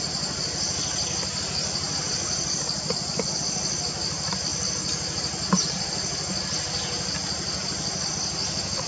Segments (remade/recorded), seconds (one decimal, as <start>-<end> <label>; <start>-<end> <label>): 0.0-8.9 recorded